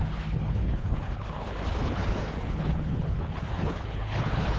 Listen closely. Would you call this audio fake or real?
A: fake